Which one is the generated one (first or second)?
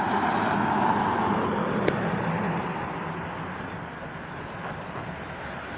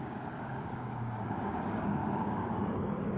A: second